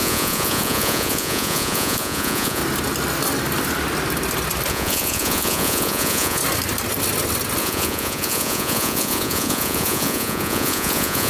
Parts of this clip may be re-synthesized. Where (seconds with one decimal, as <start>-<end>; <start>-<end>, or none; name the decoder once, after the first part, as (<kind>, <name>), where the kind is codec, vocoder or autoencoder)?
0.0-2.6 (vocoder, Vocos); 4.7-6.4; 7.6-11.3